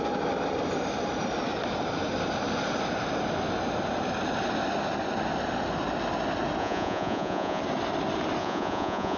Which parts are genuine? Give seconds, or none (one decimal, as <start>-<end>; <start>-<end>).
0.0-6.6; 7.6-8.4